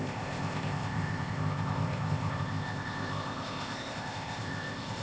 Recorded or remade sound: remade